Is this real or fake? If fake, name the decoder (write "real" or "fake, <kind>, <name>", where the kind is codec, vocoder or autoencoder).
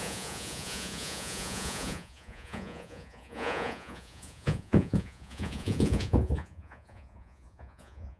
fake, vocoder, Vocos